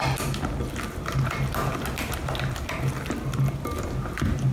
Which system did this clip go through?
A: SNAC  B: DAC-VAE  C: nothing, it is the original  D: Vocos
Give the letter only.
C